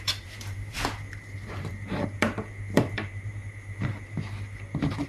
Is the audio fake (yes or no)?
yes